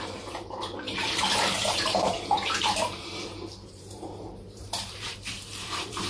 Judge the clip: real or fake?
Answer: fake